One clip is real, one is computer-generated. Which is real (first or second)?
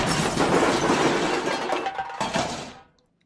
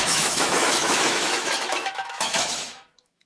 first